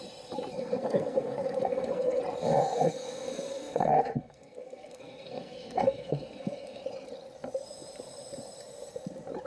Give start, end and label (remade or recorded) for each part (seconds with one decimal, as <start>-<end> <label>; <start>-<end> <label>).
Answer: 0.0-0.5 recorded; 0.5-2.2 remade; 2.2-2.6 recorded; 2.6-6.8 remade; 6.8-9.5 recorded